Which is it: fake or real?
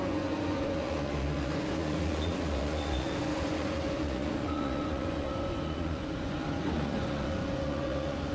fake